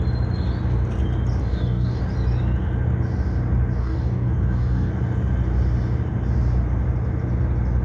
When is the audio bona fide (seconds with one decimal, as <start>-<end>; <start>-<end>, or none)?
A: 0.0-1.4; 2.0-3.8; 4.9-7.8